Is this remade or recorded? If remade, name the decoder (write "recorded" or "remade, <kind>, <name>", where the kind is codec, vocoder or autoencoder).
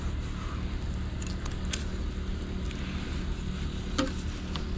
recorded